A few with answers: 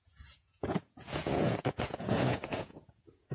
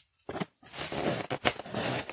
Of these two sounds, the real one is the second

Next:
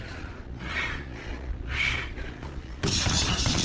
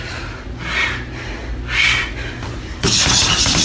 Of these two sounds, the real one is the second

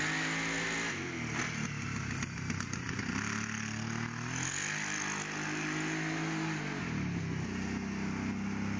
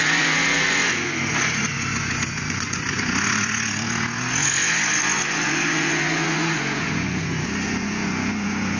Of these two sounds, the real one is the first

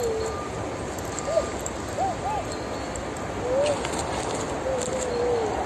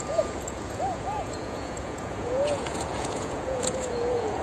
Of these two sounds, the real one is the first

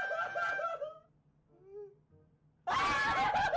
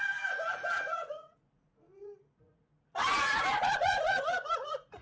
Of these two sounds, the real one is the first